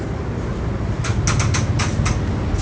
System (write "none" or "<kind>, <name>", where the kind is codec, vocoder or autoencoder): none